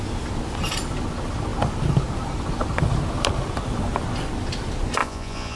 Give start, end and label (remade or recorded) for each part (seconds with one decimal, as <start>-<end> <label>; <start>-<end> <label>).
0.0-5.0 recorded; 5.0-5.6 remade